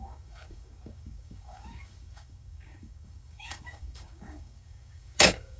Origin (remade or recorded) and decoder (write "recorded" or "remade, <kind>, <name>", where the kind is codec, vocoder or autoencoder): remade, codec, DAC